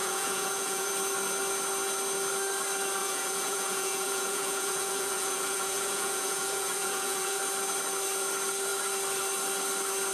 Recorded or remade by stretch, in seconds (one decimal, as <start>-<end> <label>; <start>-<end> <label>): 0.0-0.9 remade; 0.9-3.0 recorded; 3.0-7.4 remade; 7.4-10.1 recorded

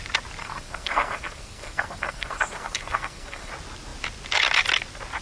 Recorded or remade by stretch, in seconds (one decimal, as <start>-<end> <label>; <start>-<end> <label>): 0.0-0.4 recorded; 0.4-3.5 remade; 3.5-5.2 recorded